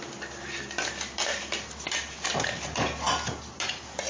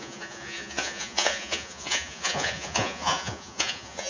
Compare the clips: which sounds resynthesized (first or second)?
second